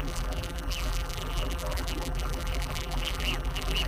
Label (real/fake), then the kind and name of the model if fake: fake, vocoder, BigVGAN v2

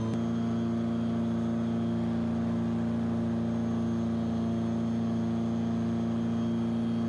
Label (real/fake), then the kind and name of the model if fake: real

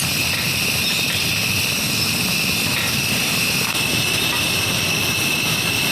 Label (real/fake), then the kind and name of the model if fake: real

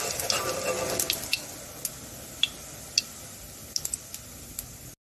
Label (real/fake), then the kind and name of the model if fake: real